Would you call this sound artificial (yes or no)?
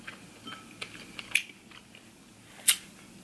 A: no